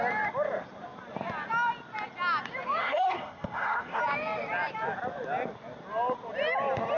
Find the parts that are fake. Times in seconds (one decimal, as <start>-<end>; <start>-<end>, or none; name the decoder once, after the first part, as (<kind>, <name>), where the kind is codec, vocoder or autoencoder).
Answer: 2.8-4.0 (codec, SNAC)